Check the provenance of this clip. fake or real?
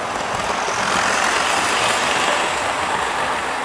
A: real